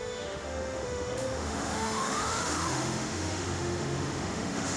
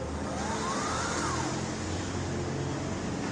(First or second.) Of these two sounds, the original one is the second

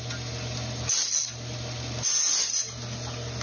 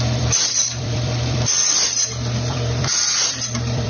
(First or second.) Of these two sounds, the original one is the first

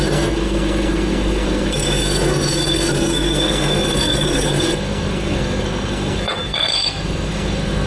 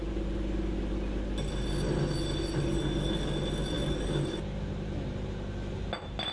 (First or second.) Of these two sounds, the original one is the second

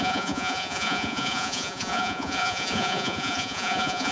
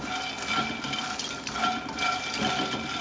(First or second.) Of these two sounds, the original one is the second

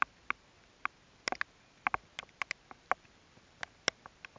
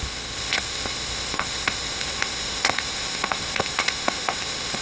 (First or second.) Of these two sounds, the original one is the first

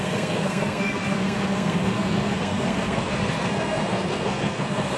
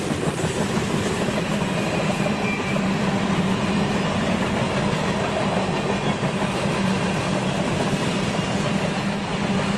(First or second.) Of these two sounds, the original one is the second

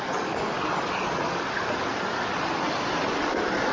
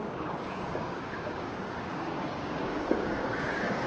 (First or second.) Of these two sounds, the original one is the first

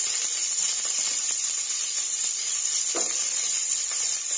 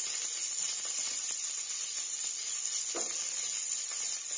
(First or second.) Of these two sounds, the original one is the second